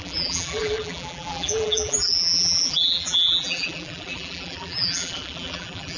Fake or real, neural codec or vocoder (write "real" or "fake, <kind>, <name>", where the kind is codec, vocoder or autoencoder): fake, vocoder, BigVGAN v2